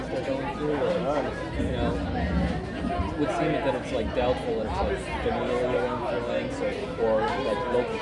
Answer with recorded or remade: recorded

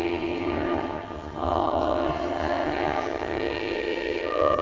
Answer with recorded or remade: remade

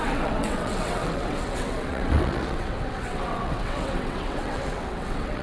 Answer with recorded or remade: remade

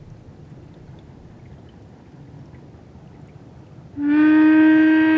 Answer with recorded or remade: recorded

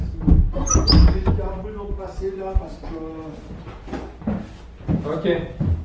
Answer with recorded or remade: recorded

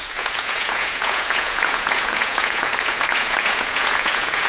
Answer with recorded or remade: remade